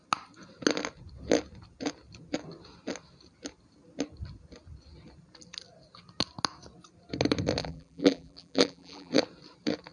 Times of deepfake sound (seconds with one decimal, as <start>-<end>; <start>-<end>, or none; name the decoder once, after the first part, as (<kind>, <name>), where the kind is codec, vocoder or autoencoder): 7.6-9.1 (vocoder, BigVGAN v2)